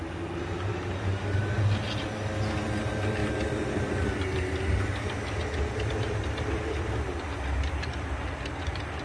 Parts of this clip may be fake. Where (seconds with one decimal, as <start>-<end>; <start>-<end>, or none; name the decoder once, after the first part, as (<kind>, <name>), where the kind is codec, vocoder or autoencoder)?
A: none